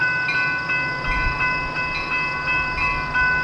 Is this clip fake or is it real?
real